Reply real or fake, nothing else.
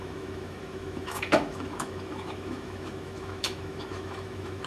fake